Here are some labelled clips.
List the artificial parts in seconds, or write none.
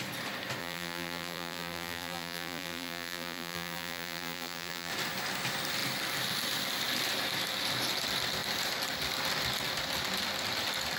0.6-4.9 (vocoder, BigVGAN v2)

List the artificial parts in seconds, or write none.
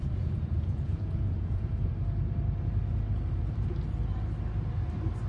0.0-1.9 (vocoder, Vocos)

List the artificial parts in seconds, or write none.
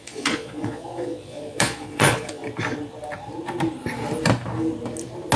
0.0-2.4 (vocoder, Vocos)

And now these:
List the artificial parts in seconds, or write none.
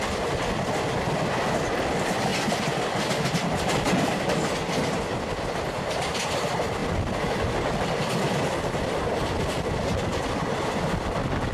none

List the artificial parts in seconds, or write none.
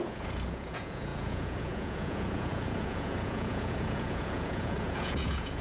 0.0-5.6 (vocoder, Vocos)